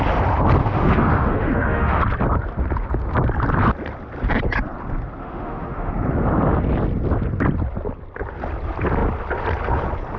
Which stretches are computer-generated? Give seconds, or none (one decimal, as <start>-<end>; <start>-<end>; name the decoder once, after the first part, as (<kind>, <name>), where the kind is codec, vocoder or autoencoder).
0.6-2.0 (autoencoder, DAC-VAE); 5.2-5.9